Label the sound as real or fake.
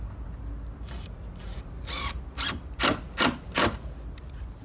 real